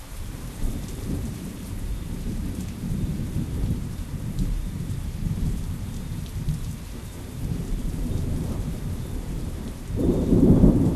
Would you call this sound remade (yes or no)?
yes